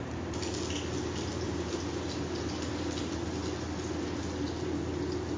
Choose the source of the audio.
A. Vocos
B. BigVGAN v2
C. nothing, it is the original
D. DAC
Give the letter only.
C